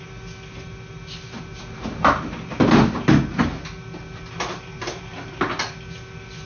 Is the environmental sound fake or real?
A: real